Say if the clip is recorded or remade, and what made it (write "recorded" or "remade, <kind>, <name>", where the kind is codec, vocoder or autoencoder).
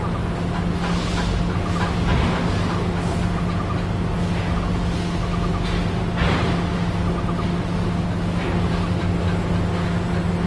recorded